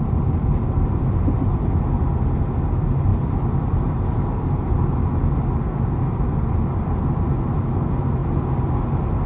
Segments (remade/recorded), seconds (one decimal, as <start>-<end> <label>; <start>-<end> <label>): 0.0-9.3 recorded